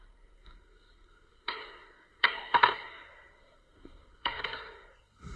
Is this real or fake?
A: fake